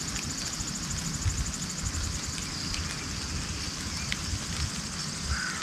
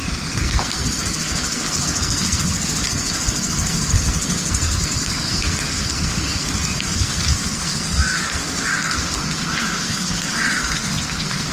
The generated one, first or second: second